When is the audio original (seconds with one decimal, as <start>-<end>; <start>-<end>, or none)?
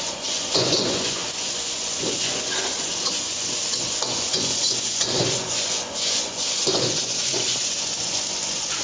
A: none